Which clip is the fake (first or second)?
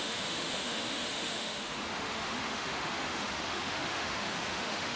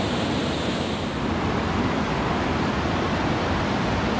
first